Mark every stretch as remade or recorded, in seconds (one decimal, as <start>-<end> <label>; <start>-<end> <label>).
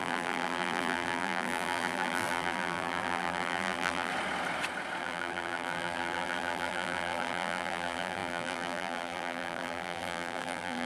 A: 0.0-4.1 remade; 4.1-5.0 recorded; 5.0-10.9 remade